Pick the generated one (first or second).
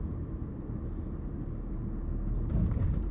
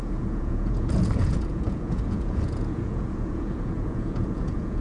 second